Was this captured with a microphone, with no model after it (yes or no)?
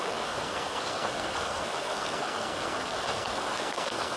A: no